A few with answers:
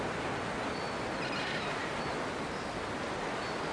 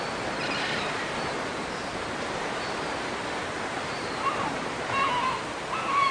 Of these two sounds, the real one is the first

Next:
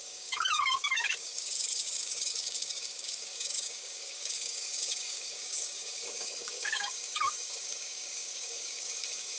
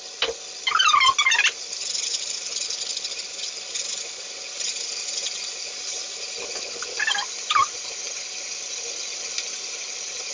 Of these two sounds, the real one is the second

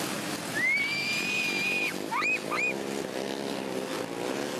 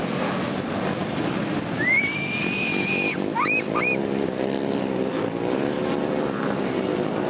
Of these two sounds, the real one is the first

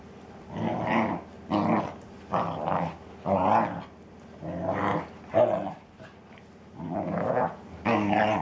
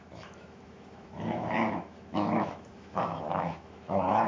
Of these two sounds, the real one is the first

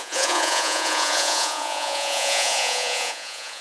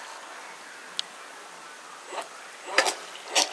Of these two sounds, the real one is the second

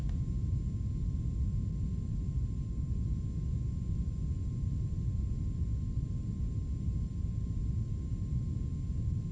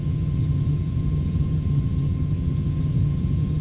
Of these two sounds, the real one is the first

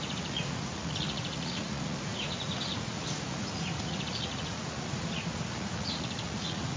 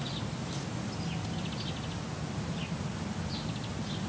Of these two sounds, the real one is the second